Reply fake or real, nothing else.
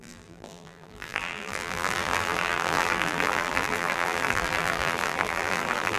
fake